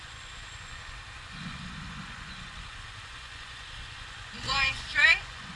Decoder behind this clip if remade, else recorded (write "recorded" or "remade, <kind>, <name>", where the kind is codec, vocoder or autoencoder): remade, vocoder, Vocos